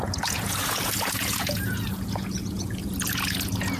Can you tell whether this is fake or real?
fake